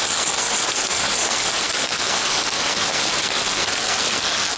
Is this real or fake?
fake